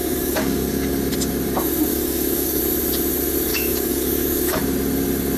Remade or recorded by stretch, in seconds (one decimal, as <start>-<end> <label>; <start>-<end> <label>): 0.0-1.0 remade; 1.0-1.9 recorded; 1.9-2.6 remade; 2.6-3.5 recorded; 3.5-4.6 remade; 4.6-5.4 recorded